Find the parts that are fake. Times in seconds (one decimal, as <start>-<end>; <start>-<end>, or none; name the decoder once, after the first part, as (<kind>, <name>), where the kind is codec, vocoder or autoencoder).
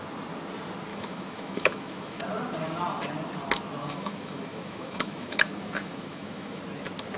0.9-2.2 (autoencoder, DAC-VAE); 3.8-6.6